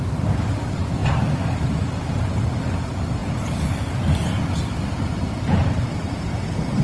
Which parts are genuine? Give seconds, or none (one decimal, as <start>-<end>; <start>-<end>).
0.0-6.8